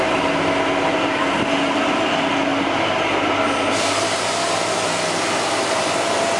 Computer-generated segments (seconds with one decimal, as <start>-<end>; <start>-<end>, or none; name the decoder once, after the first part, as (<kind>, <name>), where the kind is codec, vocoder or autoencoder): none